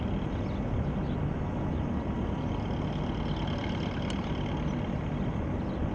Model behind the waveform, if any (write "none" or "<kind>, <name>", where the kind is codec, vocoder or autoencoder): none